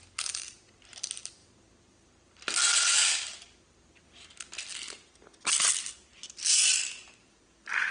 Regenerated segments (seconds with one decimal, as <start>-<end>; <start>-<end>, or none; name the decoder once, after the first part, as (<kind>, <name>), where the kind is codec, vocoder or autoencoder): none